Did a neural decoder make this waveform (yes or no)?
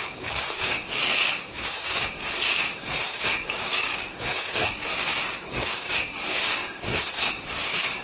yes